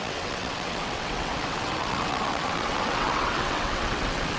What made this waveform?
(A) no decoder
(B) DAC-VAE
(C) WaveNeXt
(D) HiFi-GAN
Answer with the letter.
C